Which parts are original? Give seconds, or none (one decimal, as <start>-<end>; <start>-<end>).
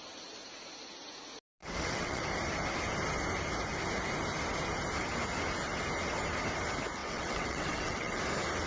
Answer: 0.0-1.6; 2.2-7.0; 8.2-8.7